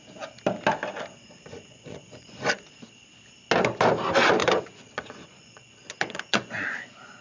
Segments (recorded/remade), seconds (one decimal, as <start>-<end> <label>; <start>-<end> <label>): 0.0-1.5 recorded; 1.5-2.5 remade; 2.5-4.4 recorded; 4.4-7.2 remade